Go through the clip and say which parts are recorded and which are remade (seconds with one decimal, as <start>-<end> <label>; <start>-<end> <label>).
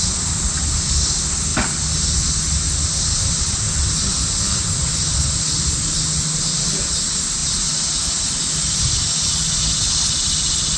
0.0-10.8 recorded